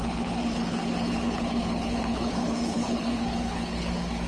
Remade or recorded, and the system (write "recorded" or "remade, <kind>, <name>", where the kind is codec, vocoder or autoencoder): remade, codec, HILCodec